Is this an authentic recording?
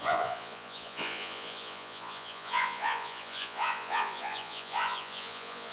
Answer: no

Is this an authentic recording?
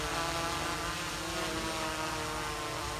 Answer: yes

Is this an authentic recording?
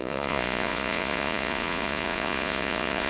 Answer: no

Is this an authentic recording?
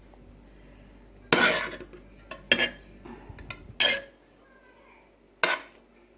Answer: yes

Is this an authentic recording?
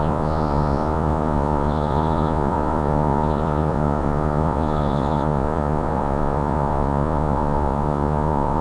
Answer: no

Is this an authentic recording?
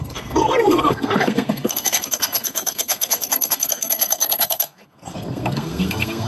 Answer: no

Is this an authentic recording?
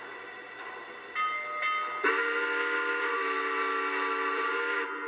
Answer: yes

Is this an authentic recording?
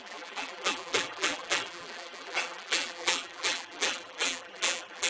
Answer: no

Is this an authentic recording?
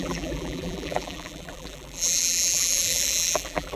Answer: no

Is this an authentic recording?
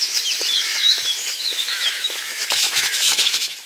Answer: no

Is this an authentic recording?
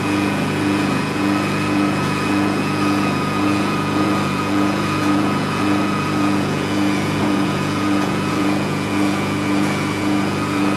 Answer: no